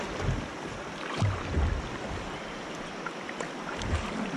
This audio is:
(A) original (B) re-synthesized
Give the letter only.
A